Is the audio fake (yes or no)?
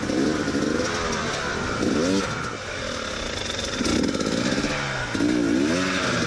no